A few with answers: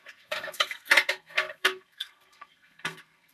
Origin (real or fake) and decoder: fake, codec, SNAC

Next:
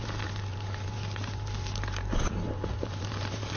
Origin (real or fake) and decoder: fake, vocoder, BigVGAN v2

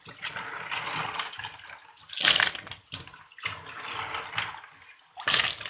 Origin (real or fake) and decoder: real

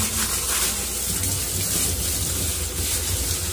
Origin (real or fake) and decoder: real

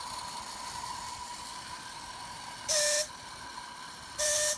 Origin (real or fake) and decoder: fake, vocoder, BigVGAN v2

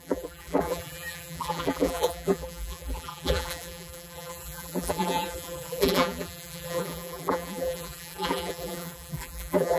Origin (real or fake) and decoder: fake, vocoder, BigVGAN v2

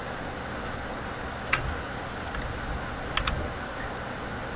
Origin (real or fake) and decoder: real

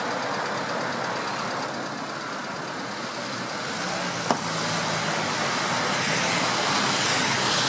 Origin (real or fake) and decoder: real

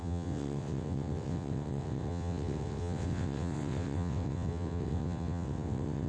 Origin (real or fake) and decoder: fake, vocoder, WaveNeXt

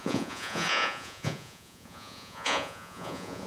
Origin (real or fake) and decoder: fake, vocoder, Vocos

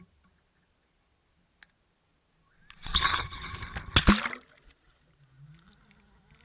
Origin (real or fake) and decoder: real